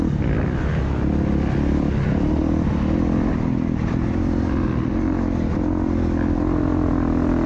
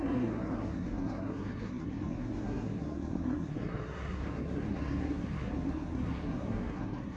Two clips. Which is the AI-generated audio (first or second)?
second